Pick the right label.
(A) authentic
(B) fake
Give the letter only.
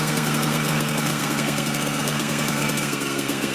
B